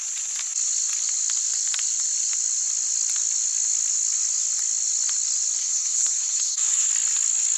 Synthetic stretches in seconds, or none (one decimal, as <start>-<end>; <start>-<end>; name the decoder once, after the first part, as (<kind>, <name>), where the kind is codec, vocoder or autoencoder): 5.6-6.9 (codec, HILCodec)